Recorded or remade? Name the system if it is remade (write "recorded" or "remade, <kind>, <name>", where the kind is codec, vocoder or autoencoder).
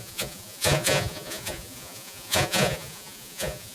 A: remade, vocoder, Vocos